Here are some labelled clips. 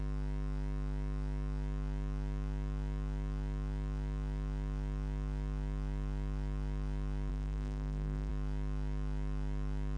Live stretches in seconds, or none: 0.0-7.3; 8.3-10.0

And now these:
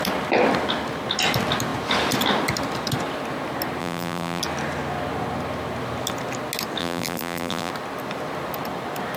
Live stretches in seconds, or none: 0.0-3.8; 4.4-6.8; 7.7-9.2

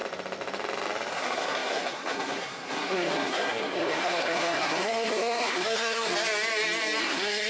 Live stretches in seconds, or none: 0.0-1.1; 6.1-7.0

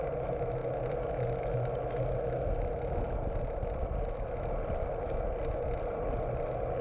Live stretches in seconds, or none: 0.0-6.8